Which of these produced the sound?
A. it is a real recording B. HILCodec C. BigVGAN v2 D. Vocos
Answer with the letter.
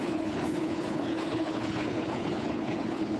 B